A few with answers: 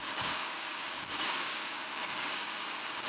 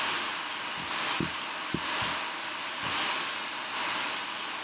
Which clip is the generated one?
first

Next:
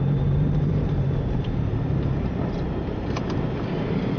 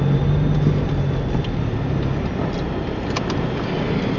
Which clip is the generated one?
first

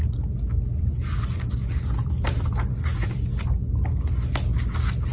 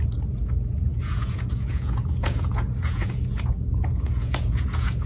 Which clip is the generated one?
second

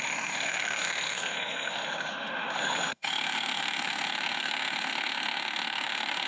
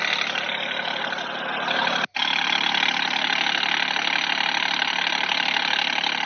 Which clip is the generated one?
first